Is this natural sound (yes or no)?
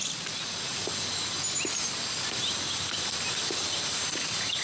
yes